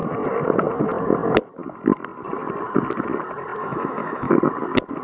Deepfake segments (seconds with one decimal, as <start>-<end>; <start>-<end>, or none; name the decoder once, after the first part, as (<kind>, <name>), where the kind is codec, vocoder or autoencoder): 3.6-4.3 (autoencoder, DAC-VAE)